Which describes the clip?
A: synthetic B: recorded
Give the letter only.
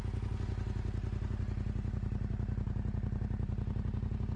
B